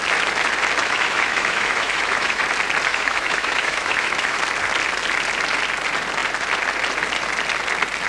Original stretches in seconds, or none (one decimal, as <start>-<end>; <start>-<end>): 0.0-0.8; 2.4-2.9; 4.4-8.1